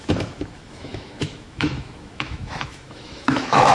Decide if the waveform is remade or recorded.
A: remade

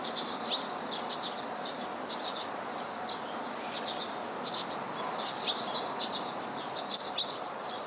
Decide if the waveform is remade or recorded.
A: recorded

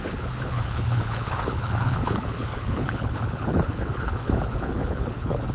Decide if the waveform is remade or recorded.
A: remade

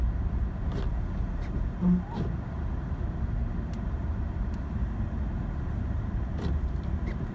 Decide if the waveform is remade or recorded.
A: recorded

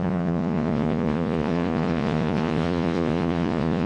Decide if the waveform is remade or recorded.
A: remade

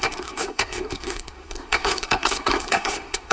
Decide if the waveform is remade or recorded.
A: remade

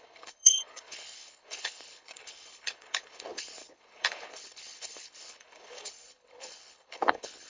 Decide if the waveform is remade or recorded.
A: remade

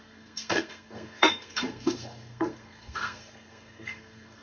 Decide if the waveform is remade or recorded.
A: remade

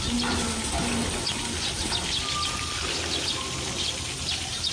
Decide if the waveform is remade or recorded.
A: recorded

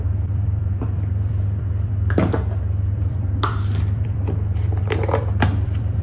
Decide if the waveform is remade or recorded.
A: remade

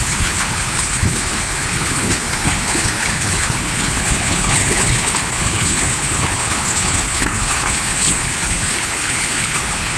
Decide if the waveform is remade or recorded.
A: remade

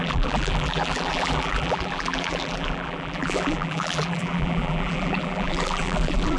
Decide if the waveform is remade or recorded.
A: remade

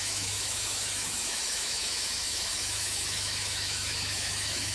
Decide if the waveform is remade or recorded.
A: remade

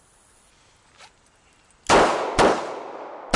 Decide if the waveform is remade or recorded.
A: recorded